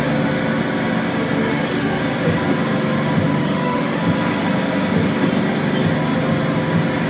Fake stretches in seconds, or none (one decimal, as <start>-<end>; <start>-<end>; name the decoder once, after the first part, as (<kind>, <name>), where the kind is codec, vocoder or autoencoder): 1.5-2.0 (autoencoder, DAC-VAE); 3.3-4.0